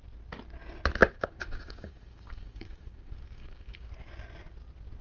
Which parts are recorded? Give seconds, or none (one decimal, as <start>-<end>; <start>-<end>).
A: 0.0-1.0; 3.9-5.0